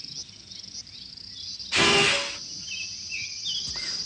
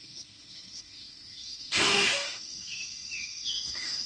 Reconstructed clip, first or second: second